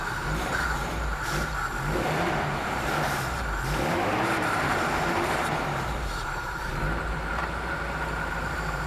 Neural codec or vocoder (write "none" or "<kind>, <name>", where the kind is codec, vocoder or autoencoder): vocoder, BigVGAN v2